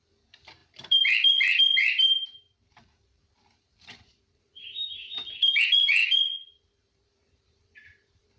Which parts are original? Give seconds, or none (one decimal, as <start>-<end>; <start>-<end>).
6.0-6.6